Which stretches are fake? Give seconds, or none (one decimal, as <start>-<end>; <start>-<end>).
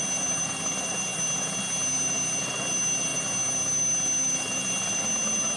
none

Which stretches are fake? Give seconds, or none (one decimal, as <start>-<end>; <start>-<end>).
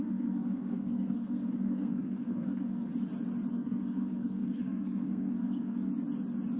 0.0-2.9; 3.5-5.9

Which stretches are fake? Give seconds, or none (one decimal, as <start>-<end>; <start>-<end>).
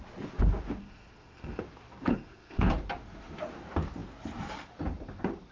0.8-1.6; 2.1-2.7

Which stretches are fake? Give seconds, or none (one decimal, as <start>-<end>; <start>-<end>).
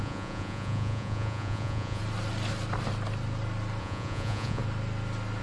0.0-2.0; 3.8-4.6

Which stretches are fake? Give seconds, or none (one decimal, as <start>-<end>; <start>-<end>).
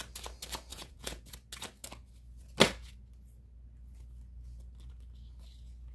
0.7-1.3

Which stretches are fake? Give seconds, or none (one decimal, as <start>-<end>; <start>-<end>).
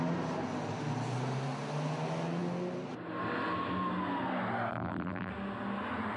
4.7-5.3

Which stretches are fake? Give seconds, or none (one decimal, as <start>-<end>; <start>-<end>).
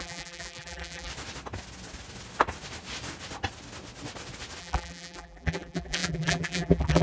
0.0-1.1; 4.6-7.0